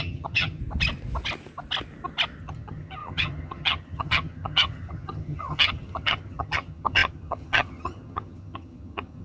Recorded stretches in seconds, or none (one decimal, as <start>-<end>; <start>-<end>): 0.6-2.4